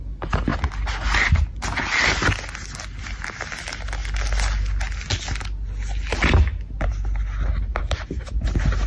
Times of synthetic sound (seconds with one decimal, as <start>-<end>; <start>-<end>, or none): none